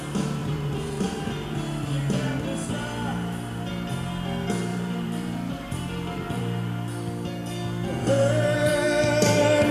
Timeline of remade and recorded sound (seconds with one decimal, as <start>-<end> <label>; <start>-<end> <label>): 0.0-0.4 recorded; 0.4-1.2 remade; 1.2-4.7 recorded; 4.7-6.4 remade; 6.4-9.7 recorded